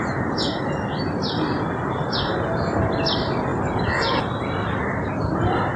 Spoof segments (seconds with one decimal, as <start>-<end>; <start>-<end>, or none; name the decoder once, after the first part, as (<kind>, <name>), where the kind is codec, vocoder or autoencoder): 1.8-2.8 (vocoder, BigVGAN v2); 3.5-5.0